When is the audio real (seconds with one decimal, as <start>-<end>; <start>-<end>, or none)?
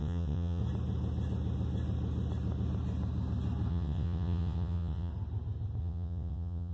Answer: 0.6-3.7; 5.1-5.8